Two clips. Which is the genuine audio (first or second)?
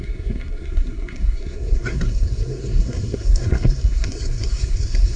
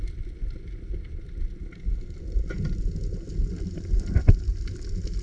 second